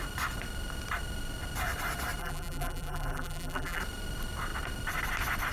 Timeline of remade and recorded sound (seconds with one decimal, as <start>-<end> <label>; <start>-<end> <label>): 0.0-2.2 recorded; 2.2-3.8 remade; 3.8-5.5 recorded